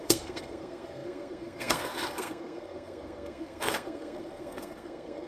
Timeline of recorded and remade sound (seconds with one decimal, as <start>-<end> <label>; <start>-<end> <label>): 0.0-5.3 remade